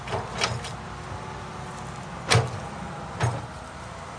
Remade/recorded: recorded